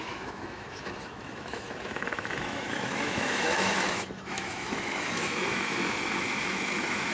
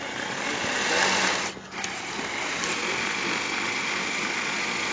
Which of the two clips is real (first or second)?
second